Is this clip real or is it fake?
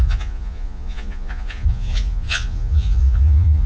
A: fake